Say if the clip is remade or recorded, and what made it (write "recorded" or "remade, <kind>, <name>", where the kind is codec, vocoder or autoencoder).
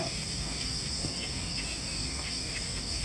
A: remade, codec, DAC